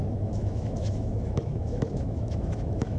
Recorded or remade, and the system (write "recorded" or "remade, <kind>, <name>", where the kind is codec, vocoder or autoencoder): remade, autoencoder, DAC-VAE